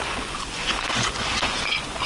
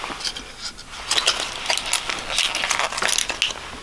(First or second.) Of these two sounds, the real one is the second